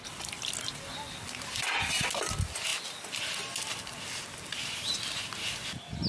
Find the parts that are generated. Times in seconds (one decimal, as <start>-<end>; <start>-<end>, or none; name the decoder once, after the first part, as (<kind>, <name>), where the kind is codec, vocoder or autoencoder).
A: none